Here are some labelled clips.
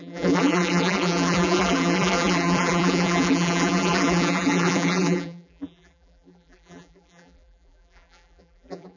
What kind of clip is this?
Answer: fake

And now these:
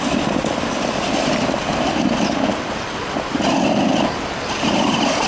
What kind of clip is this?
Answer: real